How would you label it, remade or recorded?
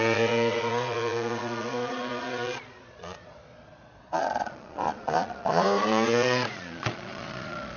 remade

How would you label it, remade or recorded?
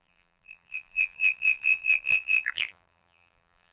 remade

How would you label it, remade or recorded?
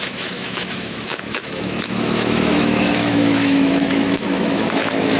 remade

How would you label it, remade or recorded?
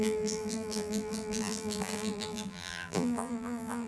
remade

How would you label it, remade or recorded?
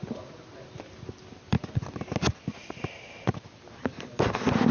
recorded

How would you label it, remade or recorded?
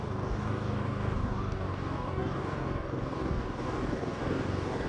remade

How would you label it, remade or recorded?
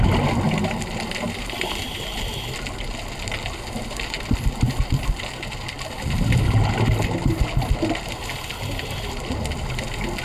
recorded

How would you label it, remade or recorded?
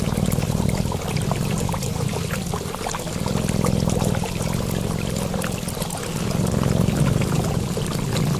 recorded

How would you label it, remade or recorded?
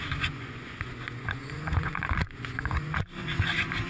remade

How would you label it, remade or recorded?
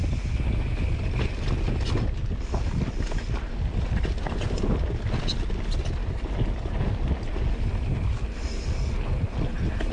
recorded